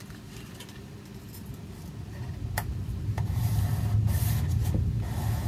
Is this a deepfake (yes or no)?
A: no